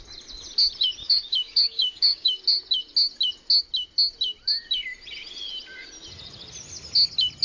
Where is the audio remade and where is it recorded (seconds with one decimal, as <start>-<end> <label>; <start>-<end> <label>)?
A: 0.0-1.0 recorded; 1.0-2.4 remade; 2.4-7.4 recorded